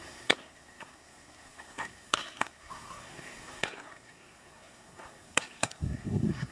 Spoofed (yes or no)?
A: yes